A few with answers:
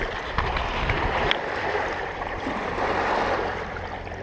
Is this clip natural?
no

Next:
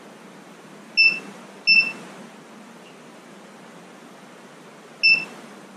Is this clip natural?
yes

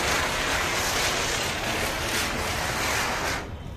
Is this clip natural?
yes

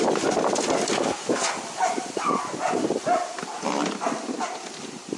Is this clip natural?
no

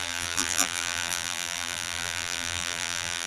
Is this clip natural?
no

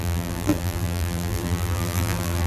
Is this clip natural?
no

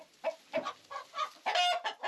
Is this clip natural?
yes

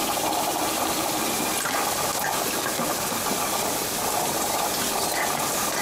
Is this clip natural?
yes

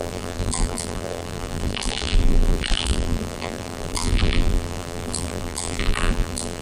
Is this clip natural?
no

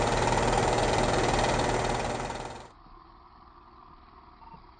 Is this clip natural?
yes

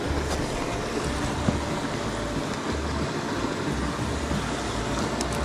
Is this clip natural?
yes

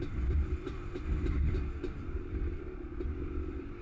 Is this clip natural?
no